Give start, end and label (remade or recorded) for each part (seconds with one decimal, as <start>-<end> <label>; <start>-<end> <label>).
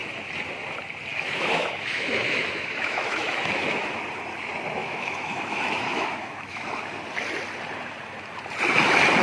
0.0-1.1 recorded; 1.1-4.0 remade; 4.0-4.8 recorded; 4.8-6.8 remade; 6.8-9.2 recorded